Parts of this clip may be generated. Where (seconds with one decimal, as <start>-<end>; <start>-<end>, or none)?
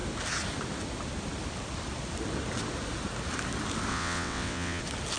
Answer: 3.9-4.8